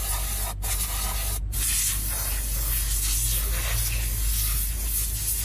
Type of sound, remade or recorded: recorded